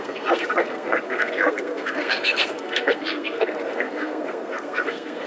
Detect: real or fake fake